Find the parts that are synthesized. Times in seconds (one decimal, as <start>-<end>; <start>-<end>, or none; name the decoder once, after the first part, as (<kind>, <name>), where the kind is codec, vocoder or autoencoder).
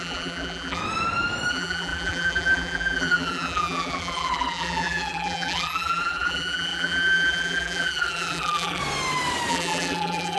0.0-0.8 (vocoder, BigVGAN v2); 1.5-8.8; 9.5-10.4